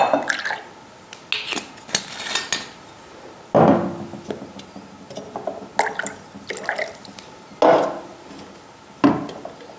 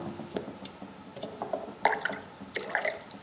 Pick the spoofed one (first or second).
second